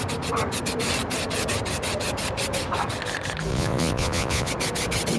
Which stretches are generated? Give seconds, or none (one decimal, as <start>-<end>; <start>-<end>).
3.5-4.5